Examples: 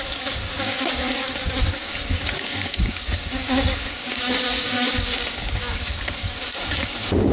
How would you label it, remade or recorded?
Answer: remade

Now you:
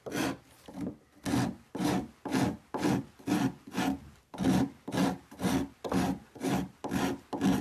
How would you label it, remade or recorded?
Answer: recorded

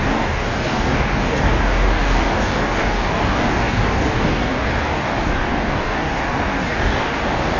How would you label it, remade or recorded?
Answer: remade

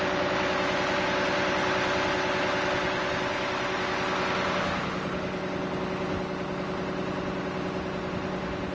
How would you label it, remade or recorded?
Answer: recorded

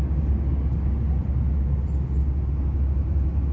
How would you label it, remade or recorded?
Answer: recorded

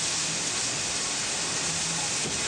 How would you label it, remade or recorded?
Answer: recorded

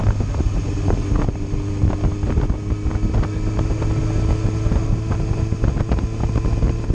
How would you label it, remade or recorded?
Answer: recorded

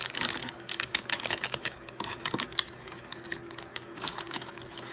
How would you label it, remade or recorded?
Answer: remade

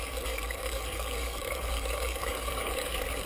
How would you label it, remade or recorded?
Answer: remade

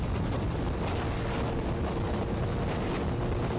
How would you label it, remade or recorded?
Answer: recorded